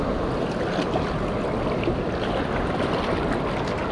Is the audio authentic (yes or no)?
yes